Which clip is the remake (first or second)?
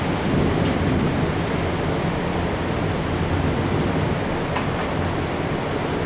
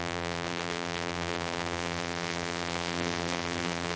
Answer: second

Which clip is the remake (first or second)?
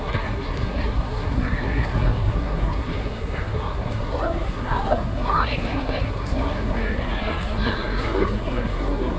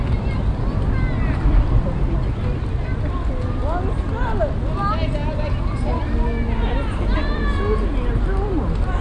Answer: first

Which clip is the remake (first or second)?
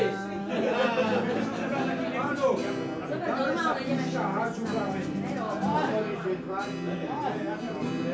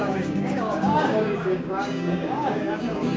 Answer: second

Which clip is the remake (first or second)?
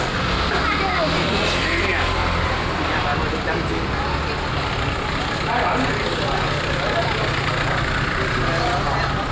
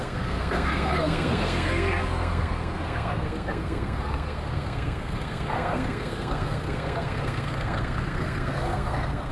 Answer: second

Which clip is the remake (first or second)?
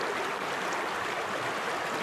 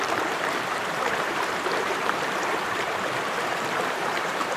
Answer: second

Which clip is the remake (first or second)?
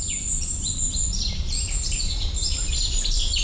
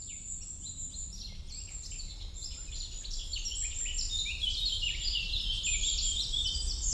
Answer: first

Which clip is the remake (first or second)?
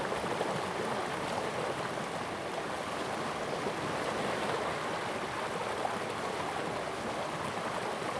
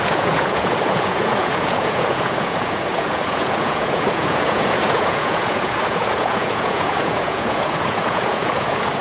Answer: second